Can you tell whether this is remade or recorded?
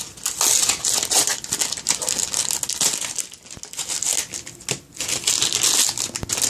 recorded